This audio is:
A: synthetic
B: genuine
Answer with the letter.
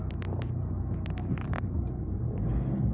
B